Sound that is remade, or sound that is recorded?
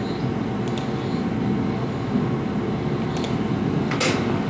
recorded